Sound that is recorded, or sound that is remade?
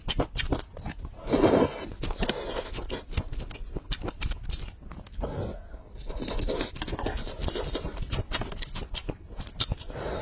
recorded